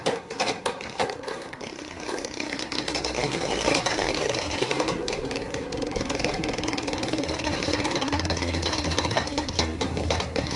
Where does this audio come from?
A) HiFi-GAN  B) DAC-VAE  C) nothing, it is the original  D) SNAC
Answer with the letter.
D